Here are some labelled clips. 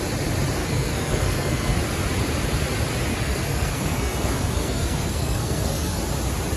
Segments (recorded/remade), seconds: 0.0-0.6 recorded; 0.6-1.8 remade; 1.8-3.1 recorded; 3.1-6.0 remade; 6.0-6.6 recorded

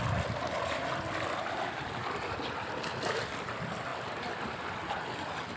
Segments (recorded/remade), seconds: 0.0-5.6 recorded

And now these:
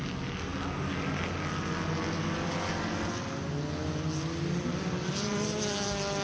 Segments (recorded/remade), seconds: 0.0-6.2 recorded

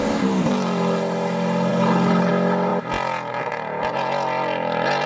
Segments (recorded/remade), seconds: 0.0-1.7 recorded; 1.7-2.3 remade; 2.3-5.1 recorded